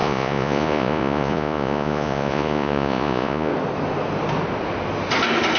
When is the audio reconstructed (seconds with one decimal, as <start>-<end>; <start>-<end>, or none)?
0.0-3.5